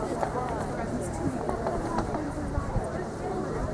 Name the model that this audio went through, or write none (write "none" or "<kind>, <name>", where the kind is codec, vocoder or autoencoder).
vocoder, BigVGAN v2